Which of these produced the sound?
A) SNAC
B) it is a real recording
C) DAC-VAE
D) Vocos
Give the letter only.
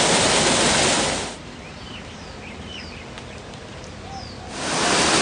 B